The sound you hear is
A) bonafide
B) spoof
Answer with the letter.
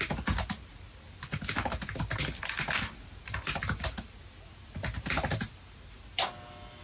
A